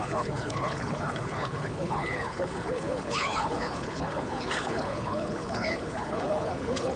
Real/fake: fake